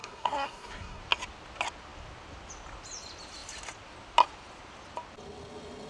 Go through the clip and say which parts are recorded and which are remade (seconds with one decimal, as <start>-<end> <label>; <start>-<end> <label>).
0.0-1.0 remade; 1.0-5.9 recorded